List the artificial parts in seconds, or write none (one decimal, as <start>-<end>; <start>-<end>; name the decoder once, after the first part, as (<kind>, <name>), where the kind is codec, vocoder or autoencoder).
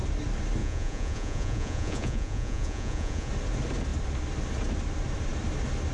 0.6-3.3 (vocoder, Vocos)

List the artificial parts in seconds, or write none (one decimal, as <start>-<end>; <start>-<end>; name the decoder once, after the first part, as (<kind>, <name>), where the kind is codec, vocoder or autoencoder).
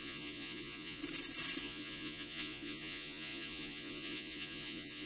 0.0-1.0 (vocoder, Vocos); 1.6-5.1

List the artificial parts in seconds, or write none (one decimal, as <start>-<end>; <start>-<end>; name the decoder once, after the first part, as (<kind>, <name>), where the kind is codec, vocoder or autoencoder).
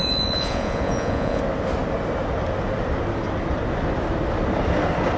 0.0-1.4 (vocoder, Vocos)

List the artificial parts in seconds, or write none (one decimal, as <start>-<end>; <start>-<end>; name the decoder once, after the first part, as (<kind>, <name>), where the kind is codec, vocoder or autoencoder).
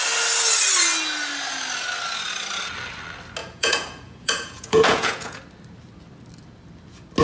3.4-5.4 (vocoder, Vocos)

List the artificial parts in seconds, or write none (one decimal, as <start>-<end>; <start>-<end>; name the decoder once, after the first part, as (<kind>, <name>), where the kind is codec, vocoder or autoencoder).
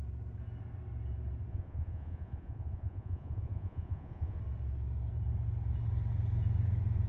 1.5-4.4 (vocoder, Vocos)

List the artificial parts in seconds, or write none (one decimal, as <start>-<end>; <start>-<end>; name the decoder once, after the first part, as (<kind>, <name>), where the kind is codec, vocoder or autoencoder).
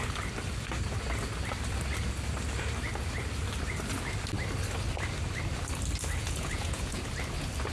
6.2-7.0 (vocoder, Vocos)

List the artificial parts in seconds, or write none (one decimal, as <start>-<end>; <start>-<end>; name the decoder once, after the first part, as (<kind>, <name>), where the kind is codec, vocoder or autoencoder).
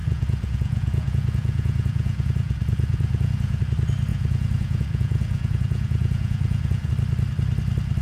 0.0-3.6 (vocoder, Vocos); 4.1-6.9